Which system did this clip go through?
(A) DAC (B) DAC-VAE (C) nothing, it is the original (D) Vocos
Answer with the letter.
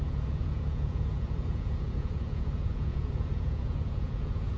D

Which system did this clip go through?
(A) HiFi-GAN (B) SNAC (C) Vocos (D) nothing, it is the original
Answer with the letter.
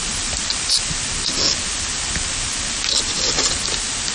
D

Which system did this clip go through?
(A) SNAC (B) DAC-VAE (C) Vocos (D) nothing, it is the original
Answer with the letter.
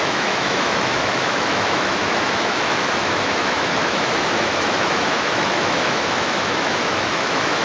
B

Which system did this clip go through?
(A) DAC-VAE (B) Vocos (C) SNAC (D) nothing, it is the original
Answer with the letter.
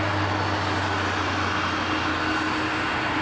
D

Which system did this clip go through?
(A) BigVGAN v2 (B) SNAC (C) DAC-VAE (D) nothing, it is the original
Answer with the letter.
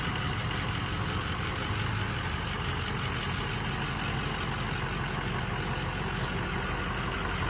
D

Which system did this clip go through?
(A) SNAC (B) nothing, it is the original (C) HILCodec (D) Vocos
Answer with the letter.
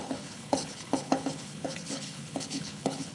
C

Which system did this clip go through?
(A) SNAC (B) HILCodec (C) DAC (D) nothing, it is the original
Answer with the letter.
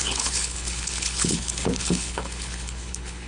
B